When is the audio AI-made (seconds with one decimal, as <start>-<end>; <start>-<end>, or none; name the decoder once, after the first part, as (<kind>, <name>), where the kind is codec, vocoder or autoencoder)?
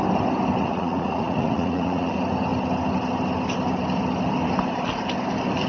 0.6-2.1 (vocoder, Vocos)